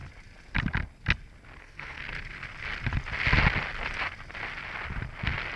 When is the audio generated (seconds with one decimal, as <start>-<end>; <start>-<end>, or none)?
1.6-2.0